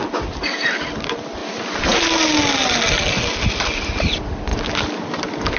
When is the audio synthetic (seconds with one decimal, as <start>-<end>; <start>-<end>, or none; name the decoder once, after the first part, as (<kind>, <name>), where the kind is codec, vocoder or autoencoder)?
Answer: none